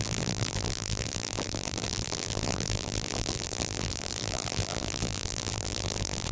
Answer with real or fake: fake